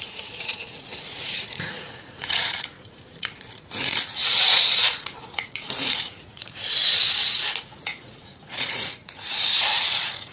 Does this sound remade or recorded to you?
remade